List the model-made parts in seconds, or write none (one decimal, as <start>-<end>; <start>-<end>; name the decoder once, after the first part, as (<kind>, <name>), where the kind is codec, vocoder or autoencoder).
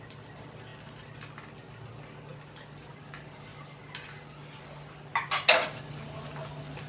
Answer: none